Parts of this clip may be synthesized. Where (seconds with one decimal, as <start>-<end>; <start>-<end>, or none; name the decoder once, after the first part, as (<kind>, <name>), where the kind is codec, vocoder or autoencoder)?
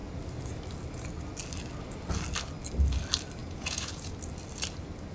3.4-4.1 (vocoder, Vocos)